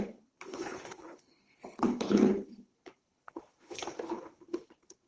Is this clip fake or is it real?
fake